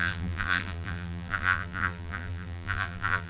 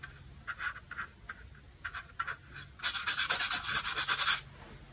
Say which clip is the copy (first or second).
first